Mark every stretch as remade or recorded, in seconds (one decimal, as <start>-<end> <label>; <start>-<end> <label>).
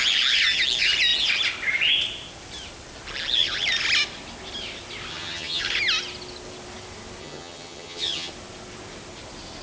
0.0-5.1 recorded; 5.1-5.6 remade; 5.6-7.2 recorded; 7.2-8.3 remade; 8.3-9.6 recorded